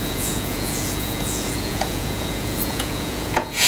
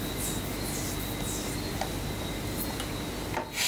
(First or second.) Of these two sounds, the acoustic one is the second